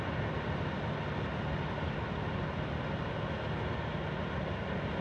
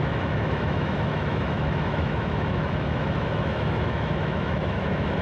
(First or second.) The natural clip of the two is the first